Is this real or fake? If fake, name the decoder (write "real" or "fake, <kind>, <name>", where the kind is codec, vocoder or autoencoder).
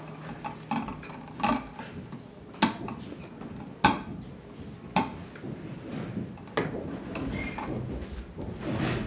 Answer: real